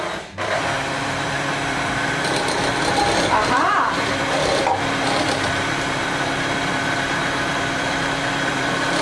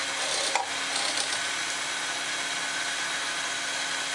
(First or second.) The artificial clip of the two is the first